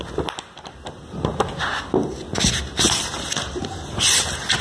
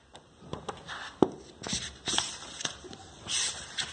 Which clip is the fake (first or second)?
second